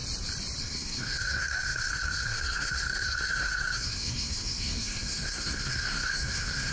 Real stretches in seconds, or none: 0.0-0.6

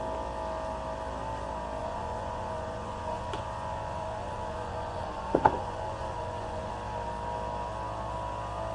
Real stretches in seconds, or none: 0.0-1.8; 6.7-8.7

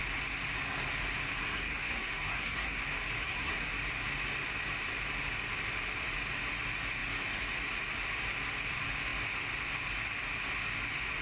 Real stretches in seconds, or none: 0.0-1.4; 2.8-3.2; 3.7-11.2

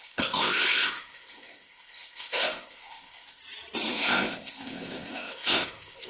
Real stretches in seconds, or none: 3.4-3.9

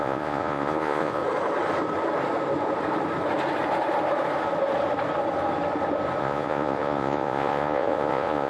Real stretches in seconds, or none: 1.2-6.2

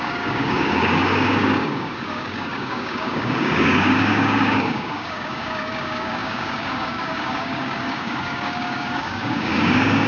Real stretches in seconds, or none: none

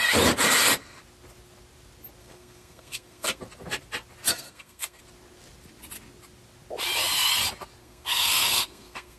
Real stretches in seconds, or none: 0.0-2.2; 3.4-4.3; 5.0-7.8